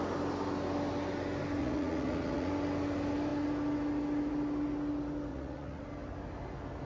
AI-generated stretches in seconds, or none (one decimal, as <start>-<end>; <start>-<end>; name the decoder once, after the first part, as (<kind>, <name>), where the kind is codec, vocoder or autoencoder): 1.6-2.5 (vocoder, Vocos); 5.3-5.8